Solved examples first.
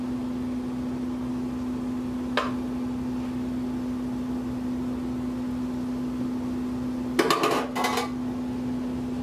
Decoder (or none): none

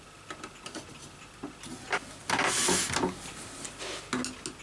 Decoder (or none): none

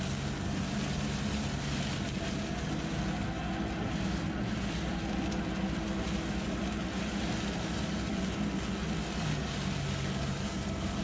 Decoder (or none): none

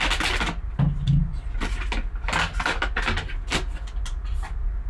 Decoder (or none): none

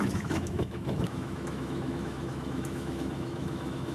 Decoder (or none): autoencoder, DAC-VAE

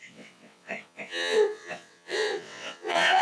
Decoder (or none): vocoder, WaveNeXt